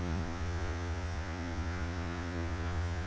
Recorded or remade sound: remade